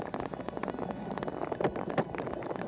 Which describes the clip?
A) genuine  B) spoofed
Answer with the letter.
A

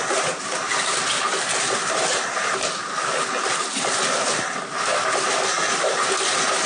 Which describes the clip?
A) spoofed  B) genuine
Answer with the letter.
B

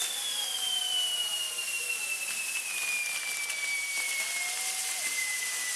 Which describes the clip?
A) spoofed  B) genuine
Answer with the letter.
B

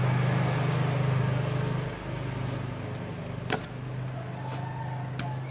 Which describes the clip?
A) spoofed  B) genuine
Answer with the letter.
B